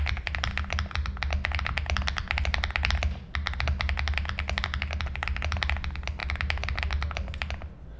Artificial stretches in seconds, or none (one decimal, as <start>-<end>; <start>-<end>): none